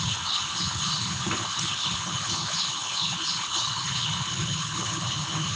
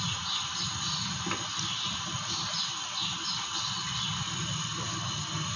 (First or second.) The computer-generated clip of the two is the first